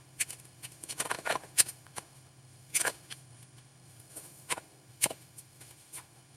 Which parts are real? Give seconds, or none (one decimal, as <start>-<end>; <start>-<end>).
none